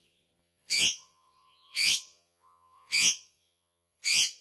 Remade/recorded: remade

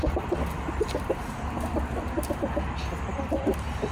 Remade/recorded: recorded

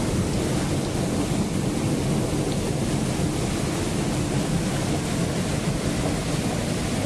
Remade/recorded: recorded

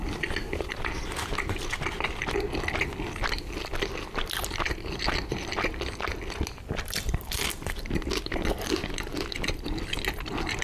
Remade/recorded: recorded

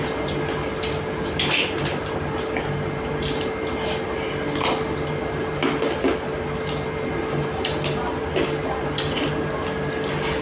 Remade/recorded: recorded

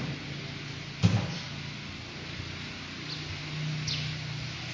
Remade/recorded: recorded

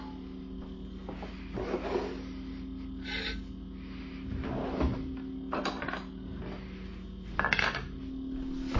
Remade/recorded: recorded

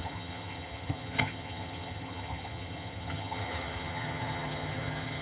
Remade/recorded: remade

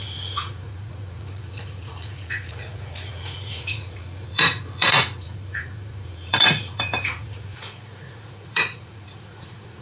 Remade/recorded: remade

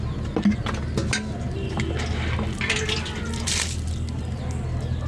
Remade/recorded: recorded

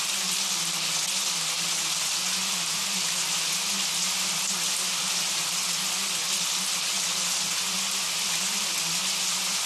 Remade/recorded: recorded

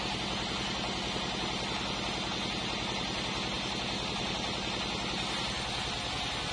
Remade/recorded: recorded